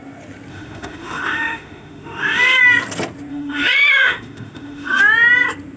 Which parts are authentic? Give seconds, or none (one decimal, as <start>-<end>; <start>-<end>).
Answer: 0.0-0.5; 2.6-3.3; 5.0-5.8